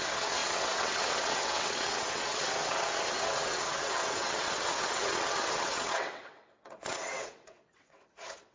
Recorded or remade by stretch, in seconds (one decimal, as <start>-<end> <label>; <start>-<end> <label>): 0.0-8.5 remade